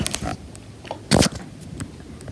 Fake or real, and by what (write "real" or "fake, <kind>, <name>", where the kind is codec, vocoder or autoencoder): real